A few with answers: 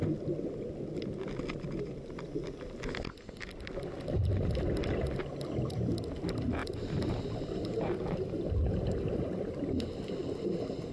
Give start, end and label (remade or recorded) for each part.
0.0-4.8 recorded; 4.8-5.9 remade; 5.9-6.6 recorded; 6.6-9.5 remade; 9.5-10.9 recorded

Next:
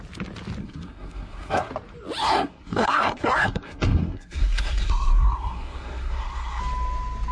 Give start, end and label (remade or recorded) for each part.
0.0-0.6 recorded; 0.6-1.7 remade; 1.7-2.2 recorded; 2.2-6.6 remade; 6.6-7.3 recorded

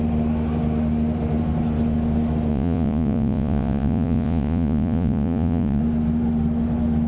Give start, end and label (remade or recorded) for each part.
0.0-2.5 recorded; 2.5-5.8 remade; 5.8-7.1 recorded

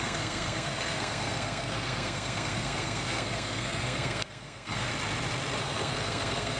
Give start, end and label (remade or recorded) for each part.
0.0-4.9 remade; 4.9-5.6 recorded; 5.6-6.6 remade

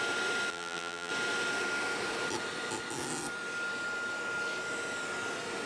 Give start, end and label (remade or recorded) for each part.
0.0-0.5 recorded; 0.5-1.1 remade; 1.1-5.7 recorded